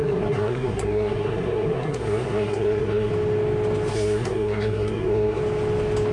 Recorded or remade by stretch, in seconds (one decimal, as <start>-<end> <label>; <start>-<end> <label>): 0.0-3.1 remade; 3.1-3.9 recorded; 3.9-5.4 remade; 5.4-6.1 recorded